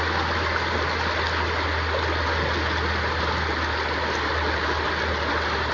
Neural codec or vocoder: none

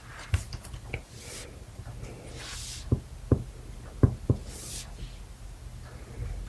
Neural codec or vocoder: none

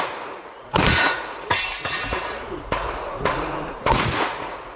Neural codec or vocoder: vocoder, Vocos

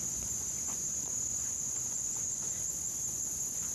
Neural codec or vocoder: vocoder, Vocos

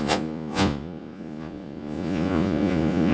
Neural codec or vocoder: vocoder, Vocos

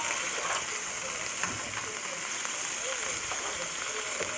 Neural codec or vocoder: none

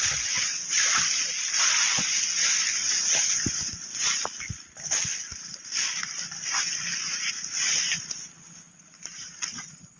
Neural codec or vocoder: none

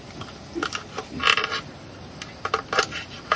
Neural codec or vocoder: none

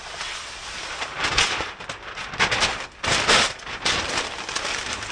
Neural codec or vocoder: none